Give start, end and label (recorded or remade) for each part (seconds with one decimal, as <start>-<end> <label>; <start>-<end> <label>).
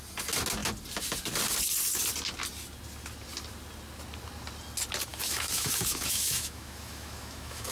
0.0-5.1 recorded; 5.1-7.7 remade